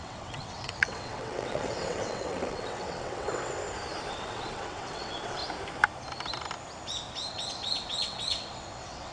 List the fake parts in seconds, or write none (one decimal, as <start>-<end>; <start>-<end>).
0.0-3.6; 4.1-5.4; 7.3-9.1